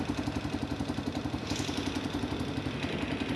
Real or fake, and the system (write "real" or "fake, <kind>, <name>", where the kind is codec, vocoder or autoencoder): real